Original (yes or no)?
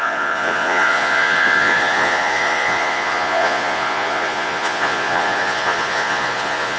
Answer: no